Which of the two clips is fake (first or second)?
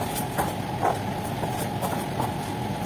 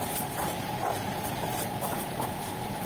second